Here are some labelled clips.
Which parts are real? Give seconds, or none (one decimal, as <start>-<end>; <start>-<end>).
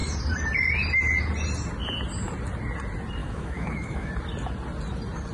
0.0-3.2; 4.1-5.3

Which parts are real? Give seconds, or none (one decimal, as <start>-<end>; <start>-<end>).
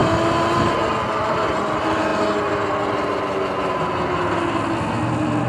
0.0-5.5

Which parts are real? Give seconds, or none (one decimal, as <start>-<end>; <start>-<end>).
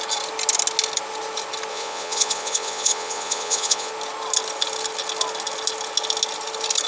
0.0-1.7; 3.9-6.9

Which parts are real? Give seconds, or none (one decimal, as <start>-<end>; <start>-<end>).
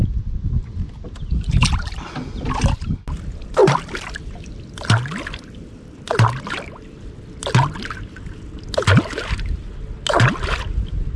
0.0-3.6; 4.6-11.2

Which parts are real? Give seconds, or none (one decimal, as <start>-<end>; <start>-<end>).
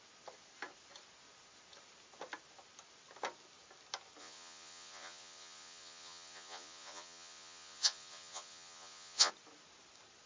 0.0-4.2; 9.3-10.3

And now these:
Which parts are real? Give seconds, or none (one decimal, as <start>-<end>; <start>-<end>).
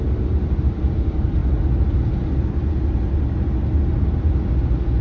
0.0-5.0